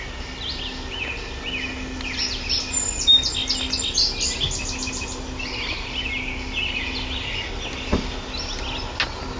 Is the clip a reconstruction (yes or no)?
no